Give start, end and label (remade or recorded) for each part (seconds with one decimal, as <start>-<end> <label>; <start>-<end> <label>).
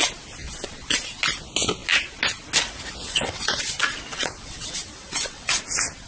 0.0-3.0 recorded; 3.0-3.6 remade; 3.6-4.1 recorded; 4.1-5.6 remade; 5.6-6.1 recorded